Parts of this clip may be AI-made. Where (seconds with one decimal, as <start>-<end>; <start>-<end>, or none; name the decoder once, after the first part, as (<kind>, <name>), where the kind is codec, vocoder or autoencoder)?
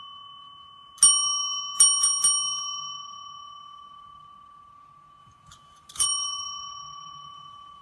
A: 5.2-7.8 (vocoder, BigVGAN v2)